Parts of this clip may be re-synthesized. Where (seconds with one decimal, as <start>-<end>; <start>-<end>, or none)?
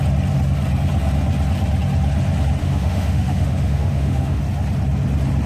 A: 2.6-4.4